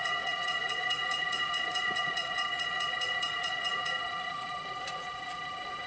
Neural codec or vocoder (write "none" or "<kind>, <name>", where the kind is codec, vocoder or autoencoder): vocoder, Vocos